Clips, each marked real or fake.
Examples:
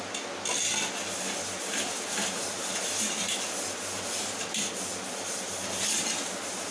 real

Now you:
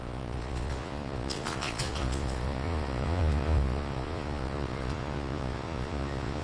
fake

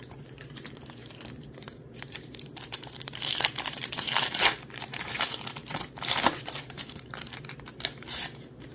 fake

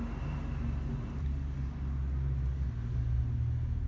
real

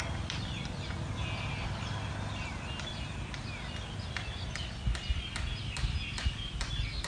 real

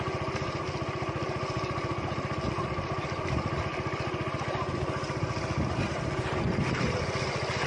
real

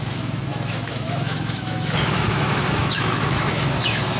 fake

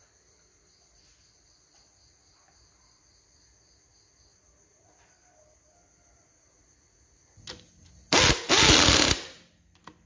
real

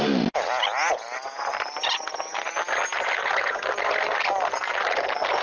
real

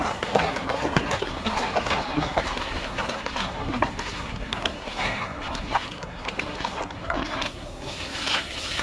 fake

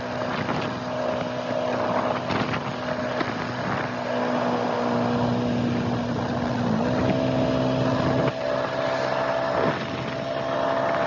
real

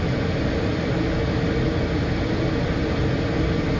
real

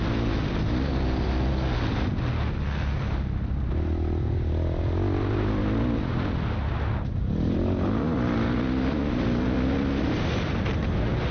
real